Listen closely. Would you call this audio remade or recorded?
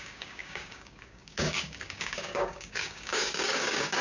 remade